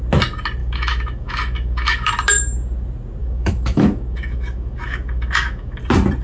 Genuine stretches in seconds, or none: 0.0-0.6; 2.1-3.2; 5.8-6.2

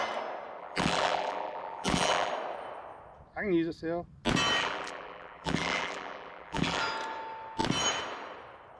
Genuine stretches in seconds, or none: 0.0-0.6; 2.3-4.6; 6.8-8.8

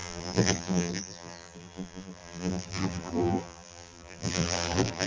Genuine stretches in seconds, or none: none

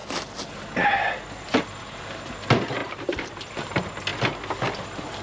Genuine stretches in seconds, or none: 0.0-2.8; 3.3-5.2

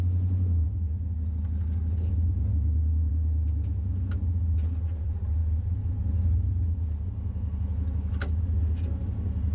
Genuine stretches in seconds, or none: 0.0-9.5